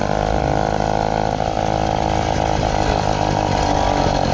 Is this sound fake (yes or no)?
no